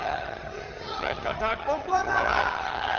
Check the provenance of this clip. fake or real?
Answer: fake